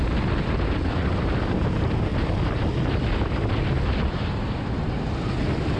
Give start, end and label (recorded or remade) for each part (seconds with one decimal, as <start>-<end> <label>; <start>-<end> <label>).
0.0-5.8 recorded